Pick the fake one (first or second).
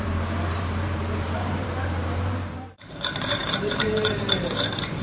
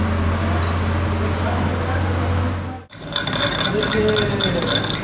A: first